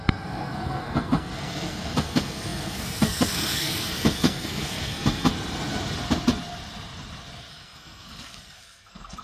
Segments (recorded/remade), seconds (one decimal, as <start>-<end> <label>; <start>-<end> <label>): 0.0-5.3 remade; 5.3-7.5 recorded; 7.5-9.2 remade